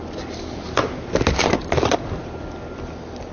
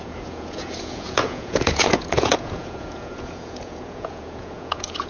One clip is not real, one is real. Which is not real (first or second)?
second